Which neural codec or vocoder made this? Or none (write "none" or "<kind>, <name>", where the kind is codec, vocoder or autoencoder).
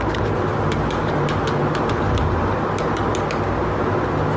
none